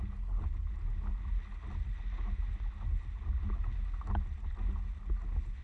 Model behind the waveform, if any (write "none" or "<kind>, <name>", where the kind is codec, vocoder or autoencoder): none